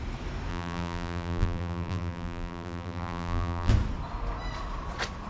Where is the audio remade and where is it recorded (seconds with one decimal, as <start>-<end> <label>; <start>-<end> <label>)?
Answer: 0.0-0.5 recorded; 0.5-3.7 remade; 3.7-5.3 recorded